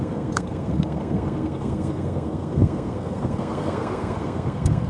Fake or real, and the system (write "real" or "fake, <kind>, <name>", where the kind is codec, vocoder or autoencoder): fake, codec, SNAC